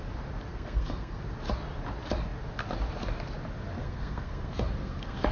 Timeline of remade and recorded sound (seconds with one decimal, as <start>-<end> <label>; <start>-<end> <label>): 0.0-0.5 recorded; 0.5-1.2 remade; 1.2-3.8 recorded; 3.8-5.3 remade